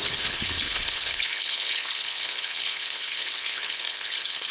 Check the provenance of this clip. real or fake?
fake